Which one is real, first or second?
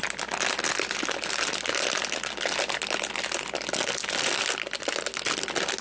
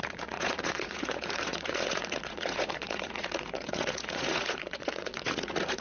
first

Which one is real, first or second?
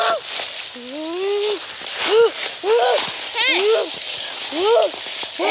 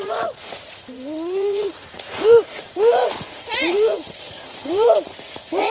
first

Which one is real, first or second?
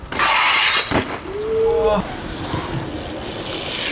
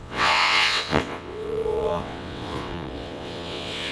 first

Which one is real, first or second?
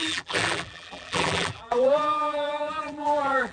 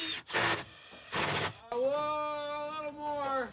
second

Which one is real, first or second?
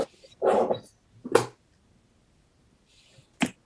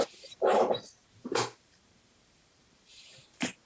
first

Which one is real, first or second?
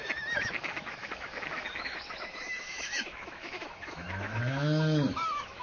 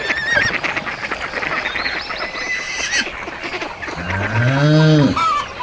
second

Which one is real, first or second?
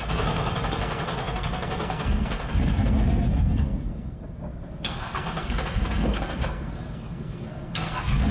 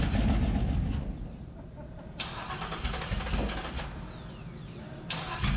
second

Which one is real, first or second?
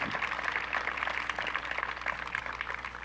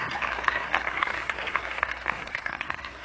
first